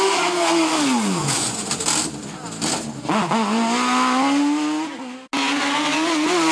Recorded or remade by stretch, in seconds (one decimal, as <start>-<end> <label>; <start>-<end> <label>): 0.0-1.2 recorded; 1.2-1.7 remade; 1.7-6.5 recorded